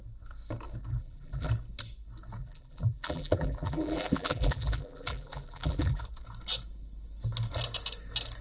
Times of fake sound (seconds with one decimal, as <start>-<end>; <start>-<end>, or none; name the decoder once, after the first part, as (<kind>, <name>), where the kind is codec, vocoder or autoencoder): 0.9-1.5 (vocoder, BigVGAN v2); 2.4-6.0